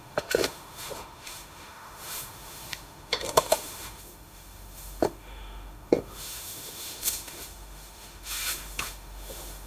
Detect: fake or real fake